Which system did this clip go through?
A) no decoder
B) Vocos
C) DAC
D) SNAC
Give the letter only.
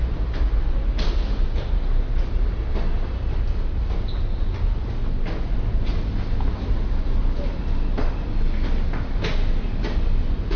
A